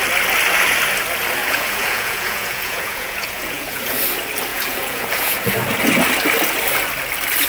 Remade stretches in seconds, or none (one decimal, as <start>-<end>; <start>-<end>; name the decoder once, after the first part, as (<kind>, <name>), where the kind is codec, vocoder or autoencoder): 1.4-4.0 (vocoder, Vocos); 4.5-5.5